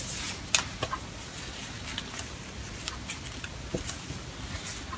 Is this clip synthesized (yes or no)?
no